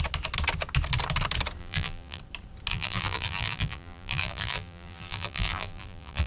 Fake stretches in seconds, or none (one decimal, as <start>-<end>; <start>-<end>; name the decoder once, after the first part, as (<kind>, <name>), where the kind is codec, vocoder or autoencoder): 1.6-2.2 (vocoder, BigVGAN v2); 2.7-6.3